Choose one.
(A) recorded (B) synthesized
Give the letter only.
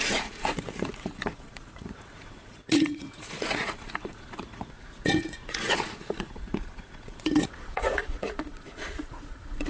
B